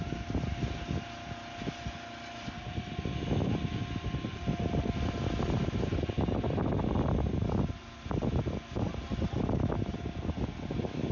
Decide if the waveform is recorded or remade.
recorded